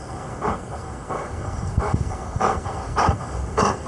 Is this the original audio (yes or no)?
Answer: no